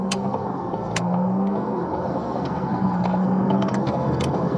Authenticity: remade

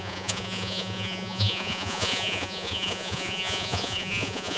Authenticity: remade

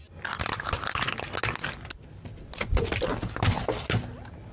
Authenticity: recorded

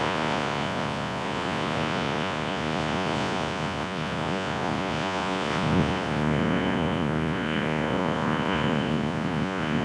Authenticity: remade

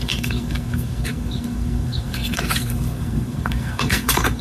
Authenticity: remade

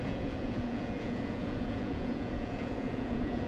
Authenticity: remade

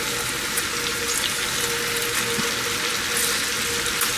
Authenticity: recorded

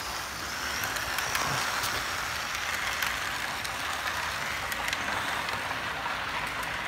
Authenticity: recorded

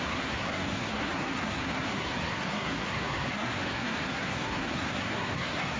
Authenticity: remade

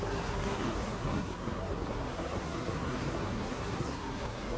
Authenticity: remade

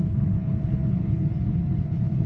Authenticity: remade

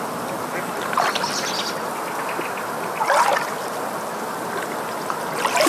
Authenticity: recorded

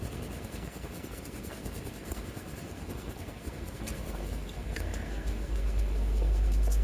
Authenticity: remade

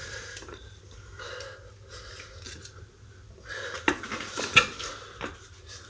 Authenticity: recorded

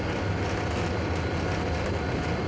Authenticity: recorded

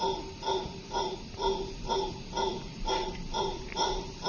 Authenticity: remade